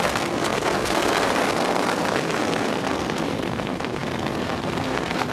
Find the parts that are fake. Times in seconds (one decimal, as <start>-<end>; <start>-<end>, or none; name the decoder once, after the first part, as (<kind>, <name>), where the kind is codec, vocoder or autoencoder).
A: 0.0-5.3 (codec, SNAC)